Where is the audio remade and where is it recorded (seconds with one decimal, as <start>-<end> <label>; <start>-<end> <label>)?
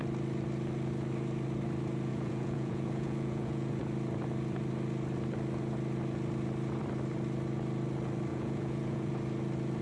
0.0-2.1 recorded; 2.1-3.8 remade; 3.8-8.3 recorded; 8.3-9.1 remade; 9.1-9.8 recorded